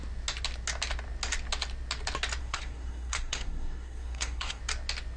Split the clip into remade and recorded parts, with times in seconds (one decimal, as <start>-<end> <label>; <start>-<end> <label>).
0.0-2.4 recorded; 2.4-4.6 remade; 4.6-5.2 recorded